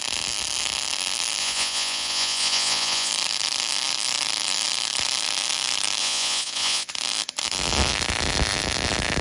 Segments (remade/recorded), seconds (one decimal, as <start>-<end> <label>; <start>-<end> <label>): 0.0-1.4 recorded; 1.4-3.1 remade; 3.1-6.0 recorded; 6.0-6.9 remade; 6.9-9.2 recorded

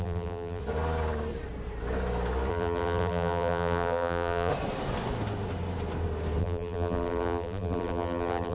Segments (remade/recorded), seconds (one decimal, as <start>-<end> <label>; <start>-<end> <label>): 0.0-0.6 remade; 0.6-2.5 recorded; 2.5-4.5 remade; 4.5-6.4 recorded; 6.4-8.5 remade

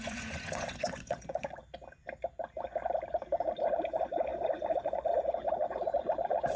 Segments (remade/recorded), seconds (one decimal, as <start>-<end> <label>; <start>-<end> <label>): 0.0-1.6 remade; 1.6-3.9 recorded; 3.9-6.6 remade

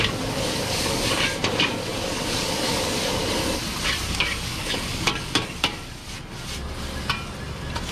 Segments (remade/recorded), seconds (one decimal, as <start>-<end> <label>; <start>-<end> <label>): 0.0-3.2 remade; 3.2-4.0 recorded; 4.0-6.0 remade; 6.0-7.9 recorded

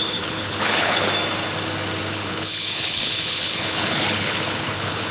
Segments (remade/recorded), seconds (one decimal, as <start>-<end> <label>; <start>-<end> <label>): 0.0-1.1 remade; 1.1-2.1 recorded; 2.1-5.1 remade

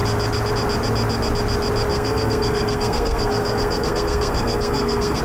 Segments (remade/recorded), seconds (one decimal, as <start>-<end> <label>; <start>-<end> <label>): 0.0-1.9 recorded; 1.9-5.2 remade

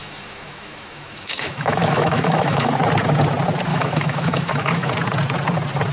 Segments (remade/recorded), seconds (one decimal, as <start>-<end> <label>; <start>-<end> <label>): 0.0-2.7 remade; 2.7-3.7 recorded; 3.7-4.9 remade; 4.9-5.9 recorded